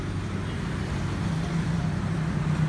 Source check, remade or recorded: remade